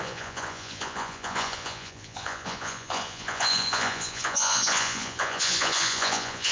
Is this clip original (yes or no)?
no